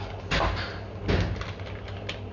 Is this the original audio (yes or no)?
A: yes